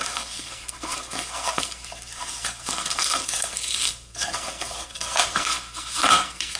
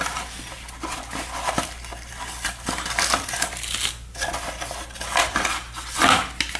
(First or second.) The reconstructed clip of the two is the first